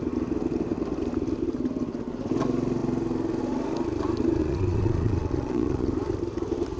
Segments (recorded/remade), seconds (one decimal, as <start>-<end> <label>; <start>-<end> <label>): 0.0-4.4 recorded; 4.4-5.9 remade; 5.9-6.8 recorded